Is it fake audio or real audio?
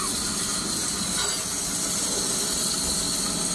real